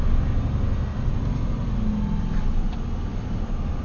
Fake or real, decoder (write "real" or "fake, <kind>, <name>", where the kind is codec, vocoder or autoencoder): real